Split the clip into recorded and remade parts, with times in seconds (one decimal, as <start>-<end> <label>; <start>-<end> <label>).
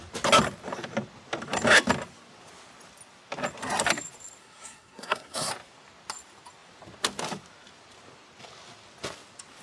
0.0-4.4 recorded; 4.4-5.5 remade; 5.5-9.6 recorded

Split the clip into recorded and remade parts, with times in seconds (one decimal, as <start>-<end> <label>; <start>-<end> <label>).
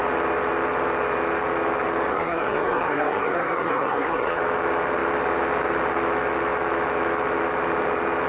0.0-2.1 recorded; 2.1-4.4 remade; 4.4-8.3 recorded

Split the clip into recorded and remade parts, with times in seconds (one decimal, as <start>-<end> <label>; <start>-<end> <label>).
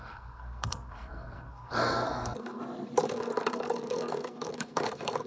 0.0-2.6 remade; 2.6-3.1 recorded; 3.1-5.3 remade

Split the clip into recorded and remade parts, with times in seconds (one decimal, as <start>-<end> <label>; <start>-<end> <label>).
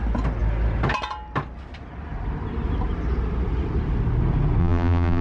0.0-4.6 recorded; 4.6-5.2 remade